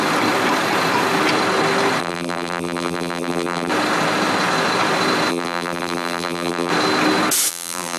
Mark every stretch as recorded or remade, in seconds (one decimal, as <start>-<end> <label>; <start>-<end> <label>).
0.0-2.0 recorded; 2.0-3.7 remade; 3.7-5.3 recorded; 5.3-6.7 remade; 6.7-7.5 recorded; 7.5-8.0 remade